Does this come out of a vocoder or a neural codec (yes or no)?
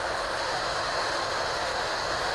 yes